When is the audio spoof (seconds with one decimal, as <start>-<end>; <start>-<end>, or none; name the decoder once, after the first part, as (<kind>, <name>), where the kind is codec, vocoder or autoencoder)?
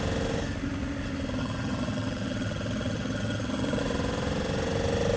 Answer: 1.4-3.8 (vocoder, HiFi-GAN)